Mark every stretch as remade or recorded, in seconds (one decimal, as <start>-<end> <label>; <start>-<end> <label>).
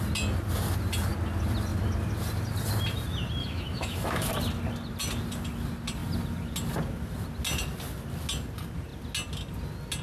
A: 0.0-3.4 recorded; 3.4-4.3 remade; 4.3-10.0 recorded